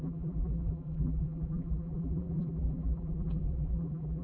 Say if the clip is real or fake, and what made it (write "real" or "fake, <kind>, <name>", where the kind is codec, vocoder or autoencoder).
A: fake, vocoder, BigVGAN v2